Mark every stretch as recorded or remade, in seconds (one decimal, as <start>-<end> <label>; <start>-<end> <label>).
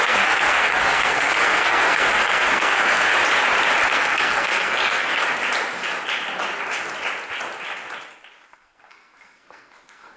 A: 0.0-3.1 remade; 3.1-3.9 recorded; 3.9-5.2 remade; 5.2-8.5 recorded; 8.5-10.2 remade